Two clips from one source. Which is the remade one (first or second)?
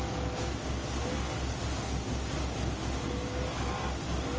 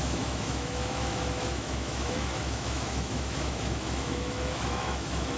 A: second